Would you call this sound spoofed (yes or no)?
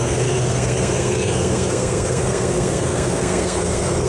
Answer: yes